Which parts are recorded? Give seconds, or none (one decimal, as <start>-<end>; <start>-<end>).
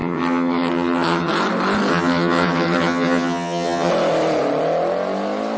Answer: 1.3-1.9; 3.9-5.6